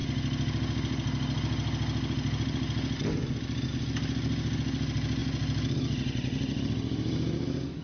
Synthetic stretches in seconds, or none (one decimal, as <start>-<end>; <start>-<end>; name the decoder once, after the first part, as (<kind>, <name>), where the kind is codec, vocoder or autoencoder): none